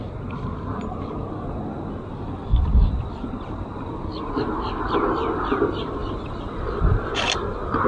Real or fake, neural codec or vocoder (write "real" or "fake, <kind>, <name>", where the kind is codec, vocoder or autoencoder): real